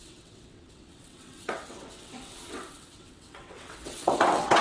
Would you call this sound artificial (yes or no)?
yes